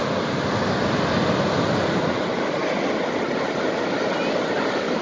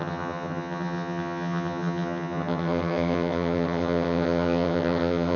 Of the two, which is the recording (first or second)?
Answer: first